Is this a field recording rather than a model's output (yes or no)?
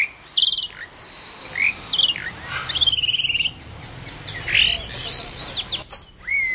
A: yes